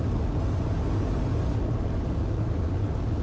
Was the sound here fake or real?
real